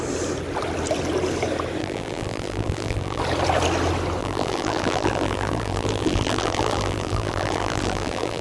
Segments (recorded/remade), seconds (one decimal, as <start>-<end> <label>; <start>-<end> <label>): 0.0-1.8 recorded; 1.8-3.2 remade; 3.2-4.2 recorded; 4.2-8.4 remade